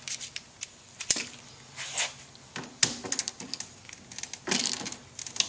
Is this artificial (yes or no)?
no